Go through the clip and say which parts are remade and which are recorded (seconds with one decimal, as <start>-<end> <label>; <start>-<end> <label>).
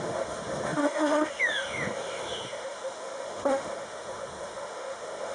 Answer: 0.0-5.3 remade